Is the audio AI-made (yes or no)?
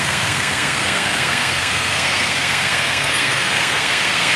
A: yes